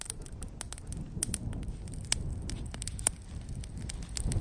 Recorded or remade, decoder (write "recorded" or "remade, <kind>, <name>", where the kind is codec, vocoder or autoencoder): recorded